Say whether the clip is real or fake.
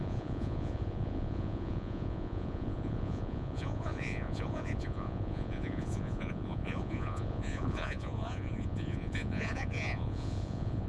fake